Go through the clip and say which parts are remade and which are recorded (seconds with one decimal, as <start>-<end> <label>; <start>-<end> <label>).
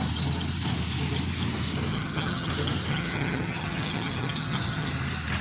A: 0.0-1.9 recorded; 1.9-2.5 remade; 2.5-2.9 recorded; 2.9-4.9 remade; 4.9-5.4 recorded